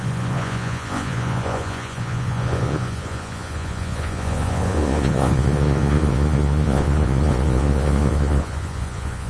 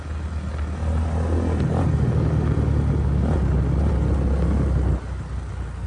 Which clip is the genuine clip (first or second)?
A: second